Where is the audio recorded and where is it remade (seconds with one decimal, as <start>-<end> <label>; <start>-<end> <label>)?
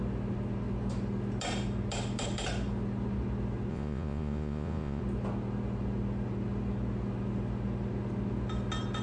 0.0-3.7 recorded; 3.7-5.0 remade; 5.0-9.0 recorded